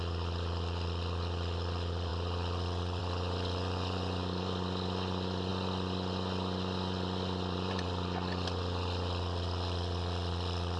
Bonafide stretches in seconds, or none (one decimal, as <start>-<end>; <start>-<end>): 0.0-10.8